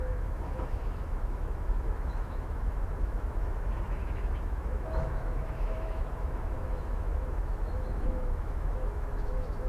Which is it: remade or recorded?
remade